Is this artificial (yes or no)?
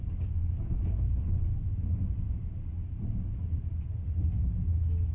no